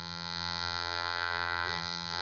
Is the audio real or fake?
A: fake